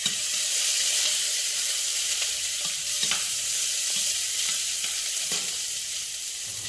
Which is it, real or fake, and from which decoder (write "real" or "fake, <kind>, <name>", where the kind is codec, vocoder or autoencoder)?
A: fake, vocoder, BigVGAN v2